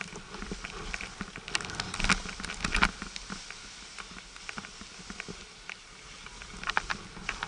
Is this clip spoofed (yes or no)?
no